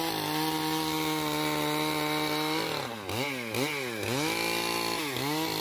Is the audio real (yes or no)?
yes